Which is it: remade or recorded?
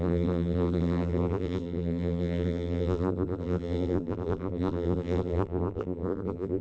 remade